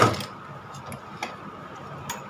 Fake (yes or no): no